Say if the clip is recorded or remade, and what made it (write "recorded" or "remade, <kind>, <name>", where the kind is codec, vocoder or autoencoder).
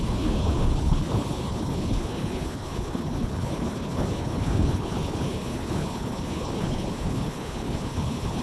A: remade, codec, HILCodec